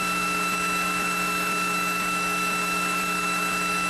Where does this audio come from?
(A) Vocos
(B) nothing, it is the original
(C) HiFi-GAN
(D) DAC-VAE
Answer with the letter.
D